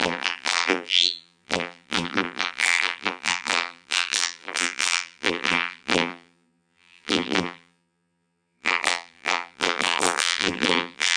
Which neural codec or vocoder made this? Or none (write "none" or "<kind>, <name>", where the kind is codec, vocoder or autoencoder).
vocoder, BigVGAN v2